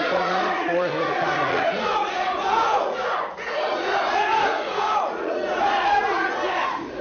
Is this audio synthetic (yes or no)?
yes